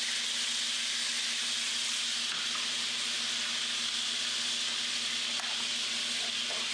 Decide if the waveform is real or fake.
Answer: real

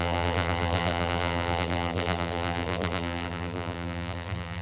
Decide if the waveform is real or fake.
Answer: fake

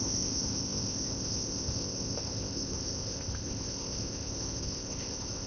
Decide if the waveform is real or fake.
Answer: fake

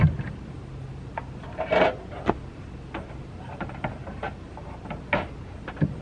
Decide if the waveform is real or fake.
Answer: real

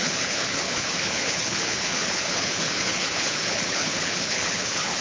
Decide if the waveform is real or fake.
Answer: fake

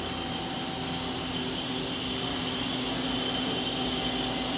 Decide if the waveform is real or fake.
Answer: real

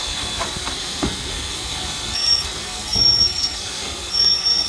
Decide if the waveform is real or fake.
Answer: fake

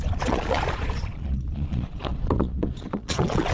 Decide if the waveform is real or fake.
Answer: fake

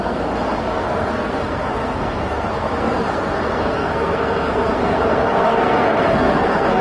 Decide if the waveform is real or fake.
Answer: fake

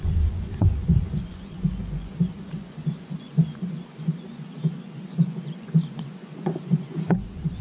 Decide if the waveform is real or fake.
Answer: fake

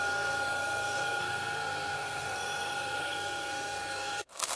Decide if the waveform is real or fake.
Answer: fake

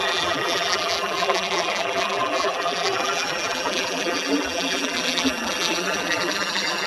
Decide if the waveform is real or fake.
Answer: fake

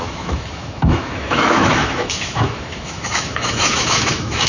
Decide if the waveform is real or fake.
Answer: fake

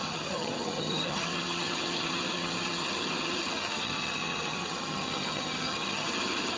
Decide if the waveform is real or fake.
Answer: fake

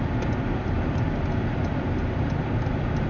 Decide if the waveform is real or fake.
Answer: real